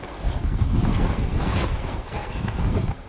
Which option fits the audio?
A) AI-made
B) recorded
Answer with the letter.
A